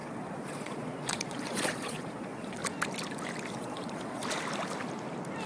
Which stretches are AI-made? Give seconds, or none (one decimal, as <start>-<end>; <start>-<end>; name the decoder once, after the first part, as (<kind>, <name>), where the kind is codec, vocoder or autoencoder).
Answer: 0.0-2.6 (vocoder, Vocos); 3.5-4.2